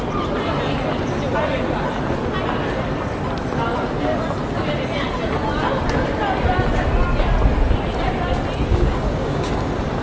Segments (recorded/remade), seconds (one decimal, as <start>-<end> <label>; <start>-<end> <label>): 0.0-8.7 recorded; 8.7-9.5 remade; 9.5-10.0 recorded